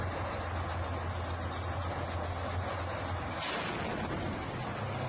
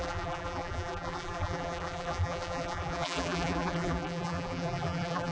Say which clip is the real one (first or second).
first